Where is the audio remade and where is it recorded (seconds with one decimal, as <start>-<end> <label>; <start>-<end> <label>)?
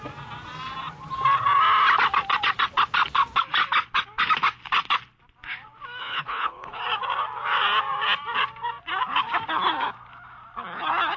0.0-6.0 recorded; 6.0-6.8 remade; 6.8-11.2 recorded